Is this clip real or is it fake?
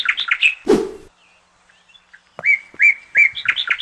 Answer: real